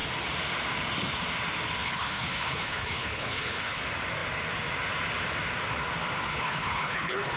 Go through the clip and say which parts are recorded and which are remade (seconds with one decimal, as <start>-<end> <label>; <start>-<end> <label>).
0.0-1.8 recorded; 1.8-3.8 remade; 3.8-6.3 recorded; 6.3-7.4 remade